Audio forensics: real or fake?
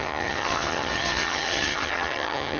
fake